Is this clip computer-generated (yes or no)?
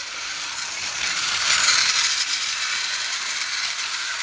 yes